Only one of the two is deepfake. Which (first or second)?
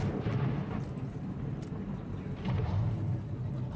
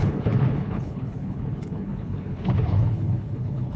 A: second